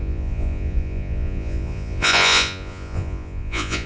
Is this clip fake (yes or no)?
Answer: yes